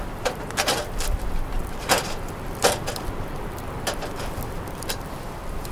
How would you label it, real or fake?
fake